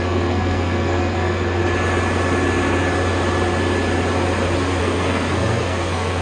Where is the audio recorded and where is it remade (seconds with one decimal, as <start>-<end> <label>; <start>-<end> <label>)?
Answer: 0.0-1.6 remade; 1.6-4.8 recorded; 4.8-6.2 remade